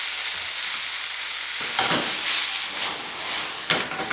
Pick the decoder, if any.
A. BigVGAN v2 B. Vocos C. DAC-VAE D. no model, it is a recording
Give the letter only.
D